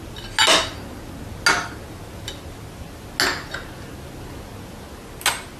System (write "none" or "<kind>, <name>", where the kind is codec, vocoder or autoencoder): none